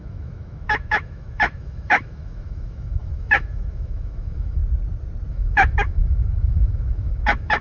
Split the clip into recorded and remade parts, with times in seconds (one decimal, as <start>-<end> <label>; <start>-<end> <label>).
0.0-4.6 remade; 4.6-5.3 recorded; 5.3-7.6 remade